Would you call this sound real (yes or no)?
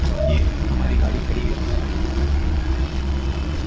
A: no